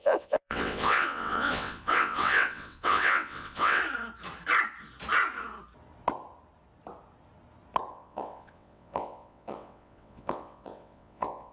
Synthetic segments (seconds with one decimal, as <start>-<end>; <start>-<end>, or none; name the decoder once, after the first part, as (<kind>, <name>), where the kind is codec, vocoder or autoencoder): 0.0-3.8 (vocoder, WaveNeXt); 7.9-11.5